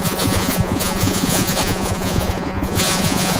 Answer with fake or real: fake